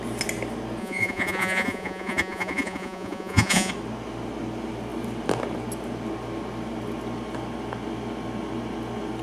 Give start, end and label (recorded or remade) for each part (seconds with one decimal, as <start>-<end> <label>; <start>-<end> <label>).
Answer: 0.0-0.8 recorded; 0.8-3.7 remade; 3.7-9.2 recorded

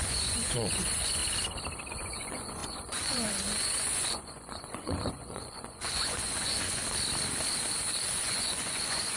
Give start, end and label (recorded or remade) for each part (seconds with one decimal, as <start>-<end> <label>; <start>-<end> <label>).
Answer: 0.0-1.2 remade; 1.2-1.9 recorded; 1.9-6.8 remade; 6.8-8.1 recorded; 8.1-9.2 remade

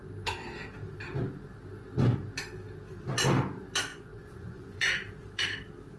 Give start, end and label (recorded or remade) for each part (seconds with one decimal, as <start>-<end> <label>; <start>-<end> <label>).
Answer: 0.0-3.9 recorded; 3.9-4.9 remade; 4.9-6.0 recorded

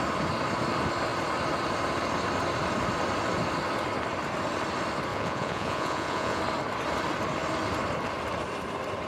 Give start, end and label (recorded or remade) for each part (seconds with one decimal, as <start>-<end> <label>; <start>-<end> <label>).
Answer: 0.0-5.1 recorded; 5.1-6.4 remade; 6.4-9.1 recorded

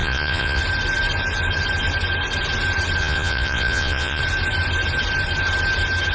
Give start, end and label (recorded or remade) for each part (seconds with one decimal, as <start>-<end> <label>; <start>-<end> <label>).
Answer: 0.0-0.6 remade; 0.6-3.0 recorded; 3.0-4.2 remade; 4.2-6.1 recorded